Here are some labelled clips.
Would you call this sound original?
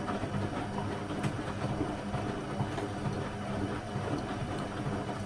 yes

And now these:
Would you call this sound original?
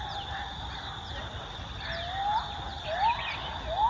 yes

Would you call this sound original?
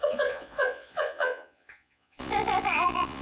no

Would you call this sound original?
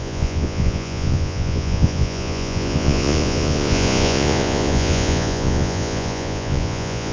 no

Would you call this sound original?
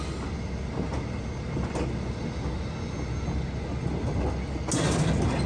yes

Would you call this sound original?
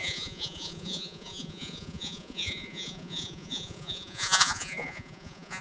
no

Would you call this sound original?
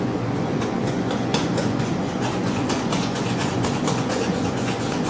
no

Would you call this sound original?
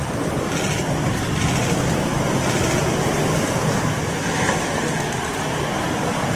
yes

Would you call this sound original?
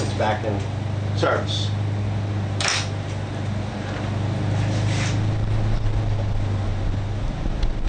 yes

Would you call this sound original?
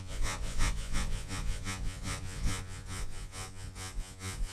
no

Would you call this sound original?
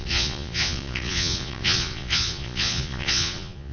no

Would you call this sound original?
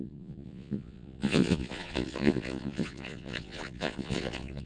no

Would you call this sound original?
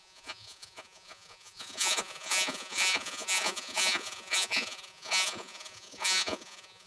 no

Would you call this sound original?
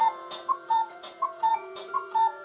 no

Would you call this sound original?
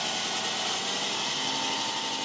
yes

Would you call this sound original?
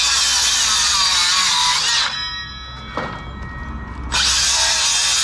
yes